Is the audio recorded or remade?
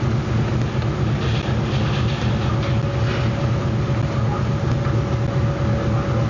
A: recorded